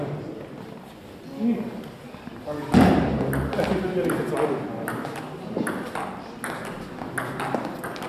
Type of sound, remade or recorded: recorded